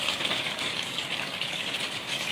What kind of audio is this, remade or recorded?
remade